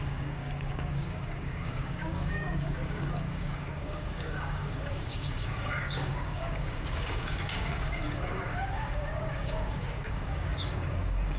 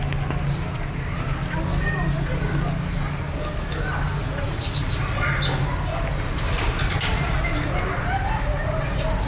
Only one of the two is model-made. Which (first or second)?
first